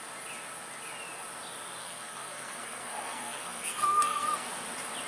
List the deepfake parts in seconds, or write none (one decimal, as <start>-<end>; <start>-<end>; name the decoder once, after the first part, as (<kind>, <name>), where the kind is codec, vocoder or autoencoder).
1.8-4.5 (codec, SNAC)